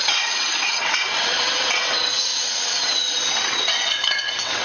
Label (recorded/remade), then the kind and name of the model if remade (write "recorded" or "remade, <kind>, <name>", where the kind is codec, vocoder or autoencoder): remade, vocoder, WaveNeXt